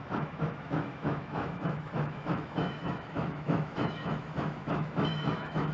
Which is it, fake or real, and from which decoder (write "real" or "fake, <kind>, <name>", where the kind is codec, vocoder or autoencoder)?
fake, autoencoder, DAC-VAE